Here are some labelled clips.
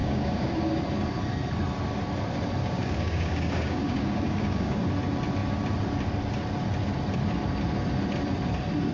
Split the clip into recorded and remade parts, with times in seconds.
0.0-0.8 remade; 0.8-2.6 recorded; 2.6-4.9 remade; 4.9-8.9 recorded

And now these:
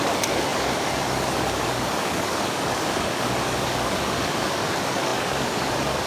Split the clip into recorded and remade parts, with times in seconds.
0.0-6.1 remade

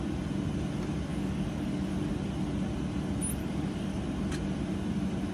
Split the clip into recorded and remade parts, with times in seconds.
0.0-1.1 recorded; 1.1-2.1 remade; 2.1-3.4 recorded; 3.4-4.0 remade; 4.0-5.3 recorded

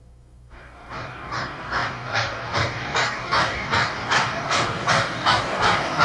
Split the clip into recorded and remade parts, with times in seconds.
0.0-6.0 remade